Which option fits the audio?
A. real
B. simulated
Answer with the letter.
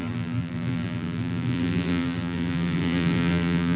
B